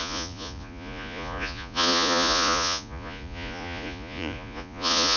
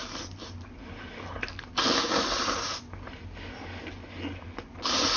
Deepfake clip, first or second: first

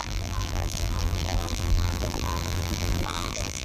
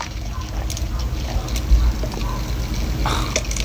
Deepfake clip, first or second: first